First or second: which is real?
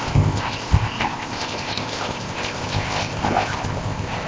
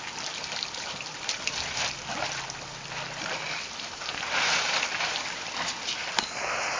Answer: second